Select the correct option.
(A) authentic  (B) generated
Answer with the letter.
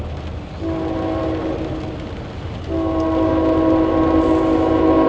A